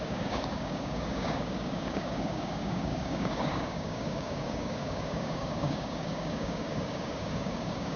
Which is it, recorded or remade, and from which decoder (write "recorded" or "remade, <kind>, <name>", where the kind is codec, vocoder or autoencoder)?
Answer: remade, codec, DAC